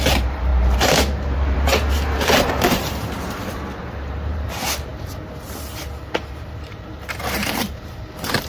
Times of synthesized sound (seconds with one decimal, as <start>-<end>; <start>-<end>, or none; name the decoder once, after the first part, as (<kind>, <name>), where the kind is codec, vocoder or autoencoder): 0.0-4.9 (vocoder, BigVGAN v2); 5.8-8.5